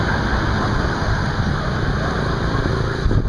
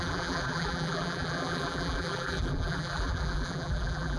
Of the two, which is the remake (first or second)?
second